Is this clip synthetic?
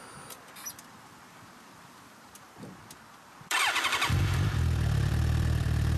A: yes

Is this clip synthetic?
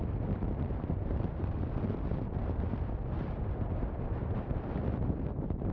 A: yes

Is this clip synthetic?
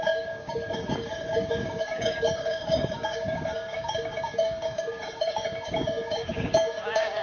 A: yes